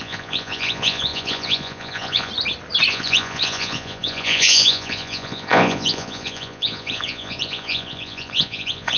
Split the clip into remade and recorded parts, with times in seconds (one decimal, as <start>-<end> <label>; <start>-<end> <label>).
0.0-2.3 remade; 2.3-2.9 recorded; 2.9-9.0 remade